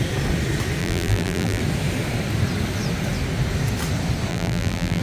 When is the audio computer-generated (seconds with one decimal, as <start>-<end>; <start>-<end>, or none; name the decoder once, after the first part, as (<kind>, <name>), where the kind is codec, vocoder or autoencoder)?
0.8-1.6 (vocoder, BigVGAN v2); 4.3-5.0